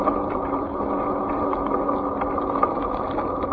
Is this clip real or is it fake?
real